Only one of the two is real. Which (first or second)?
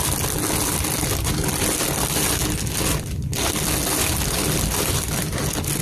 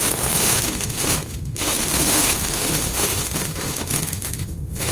first